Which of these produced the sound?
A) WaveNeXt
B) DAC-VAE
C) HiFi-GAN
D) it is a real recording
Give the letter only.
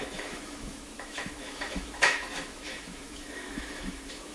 B